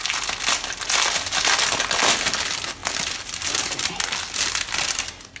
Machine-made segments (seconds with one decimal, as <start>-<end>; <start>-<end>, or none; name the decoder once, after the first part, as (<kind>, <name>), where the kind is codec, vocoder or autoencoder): none